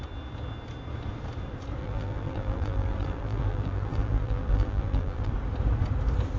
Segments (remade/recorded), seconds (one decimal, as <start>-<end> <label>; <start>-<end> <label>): 0.0-1.8 recorded; 1.8-5.3 remade; 5.3-6.4 recorded